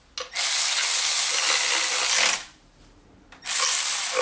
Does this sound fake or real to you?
real